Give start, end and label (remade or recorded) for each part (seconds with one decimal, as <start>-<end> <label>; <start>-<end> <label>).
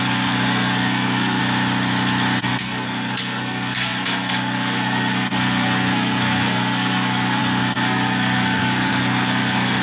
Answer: 0.0-1.4 remade; 1.4-2.4 recorded; 2.4-9.8 remade